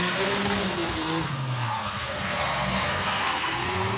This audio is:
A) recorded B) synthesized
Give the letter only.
B